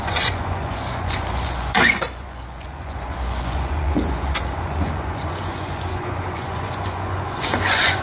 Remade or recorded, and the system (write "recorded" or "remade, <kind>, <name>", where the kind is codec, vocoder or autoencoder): remade, vocoder, Vocos